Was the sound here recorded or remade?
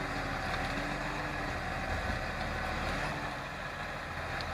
recorded